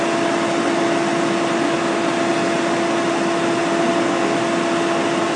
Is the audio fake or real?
real